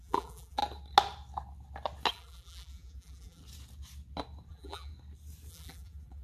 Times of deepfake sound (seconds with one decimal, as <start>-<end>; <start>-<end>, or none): 0.0-0.6; 2.1-3.4; 4.5-4.9; 5.5-6.2